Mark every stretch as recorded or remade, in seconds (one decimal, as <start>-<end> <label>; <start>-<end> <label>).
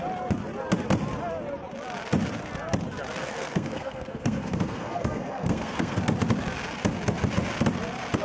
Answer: 0.0-3.2 recorded; 3.2-6.0 remade; 6.0-8.2 recorded